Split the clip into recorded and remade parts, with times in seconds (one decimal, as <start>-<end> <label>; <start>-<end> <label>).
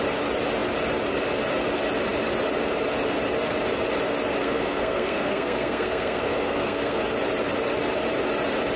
0.0-4.4 recorded; 4.4-7.0 remade; 7.0-8.8 recorded